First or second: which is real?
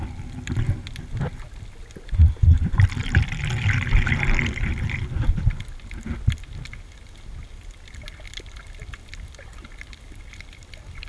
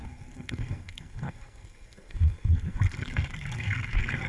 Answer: first